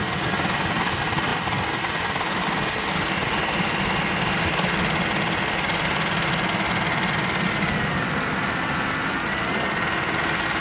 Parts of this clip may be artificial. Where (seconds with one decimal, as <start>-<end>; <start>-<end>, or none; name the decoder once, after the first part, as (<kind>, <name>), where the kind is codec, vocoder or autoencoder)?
none